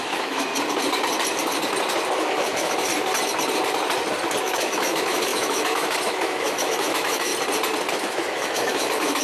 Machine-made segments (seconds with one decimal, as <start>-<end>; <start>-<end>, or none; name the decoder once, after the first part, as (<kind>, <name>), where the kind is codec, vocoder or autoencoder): 0.0-0.5 (autoencoder, DAC-VAE); 2.1-2.9; 4.4-7.3; 7.9-9.2